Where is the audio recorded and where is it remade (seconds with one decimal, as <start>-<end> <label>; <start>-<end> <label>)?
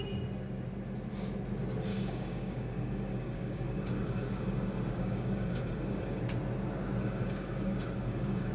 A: 0.0-1.9 recorded; 1.9-6.2 remade; 6.2-7.0 recorded; 7.0-8.5 remade